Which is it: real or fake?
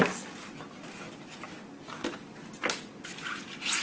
real